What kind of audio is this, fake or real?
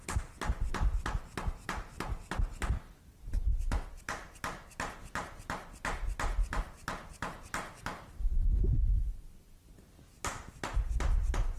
real